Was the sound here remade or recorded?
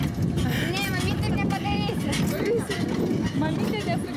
recorded